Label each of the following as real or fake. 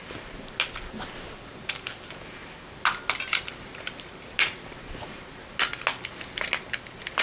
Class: real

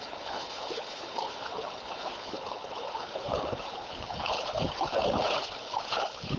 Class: fake